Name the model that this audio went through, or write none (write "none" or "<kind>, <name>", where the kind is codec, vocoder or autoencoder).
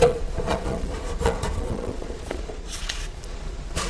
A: vocoder, Vocos